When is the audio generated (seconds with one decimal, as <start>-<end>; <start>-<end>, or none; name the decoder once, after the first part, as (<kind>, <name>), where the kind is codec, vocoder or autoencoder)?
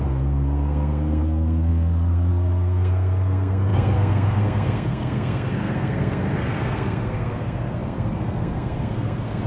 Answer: 0.0-9.5 (codec, SNAC)